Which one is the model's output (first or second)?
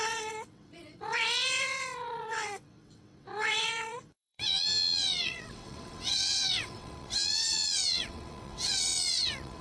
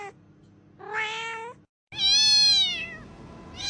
first